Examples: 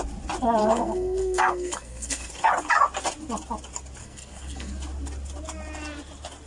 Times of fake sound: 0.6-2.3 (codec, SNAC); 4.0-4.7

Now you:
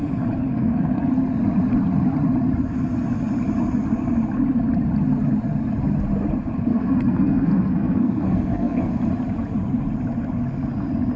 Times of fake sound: 0.5-1.1 (codec, SNAC); 6.7-8.9

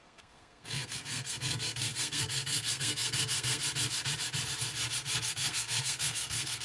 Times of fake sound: 0.0-3.6 (codec, SNAC); 5.3-6.6

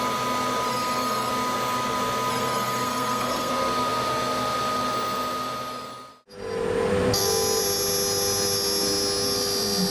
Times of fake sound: 0.7-1.3 (codec, SNAC); 2.3-3.5

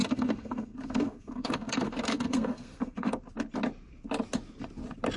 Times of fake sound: 0.0-3.1 (codec, SNAC)

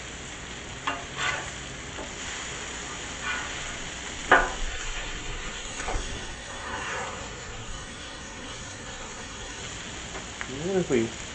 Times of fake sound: 4.7-9.6 (codec, SNAC)

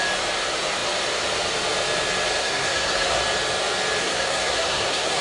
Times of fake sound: 2.4-3.2 (codec, SNAC); 4.0-5.2

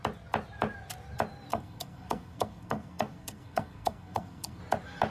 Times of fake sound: 1.5-4.6 (codec, SNAC)